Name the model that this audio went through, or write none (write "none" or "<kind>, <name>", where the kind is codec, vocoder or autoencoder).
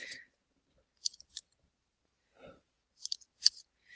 vocoder, BigVGAN v2